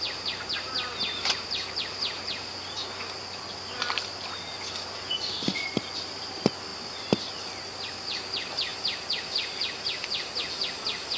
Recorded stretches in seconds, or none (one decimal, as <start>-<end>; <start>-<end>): 0.0-6.7; 7.5-8.7; 10.5-11.2